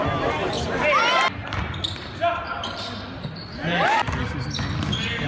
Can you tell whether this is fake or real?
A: real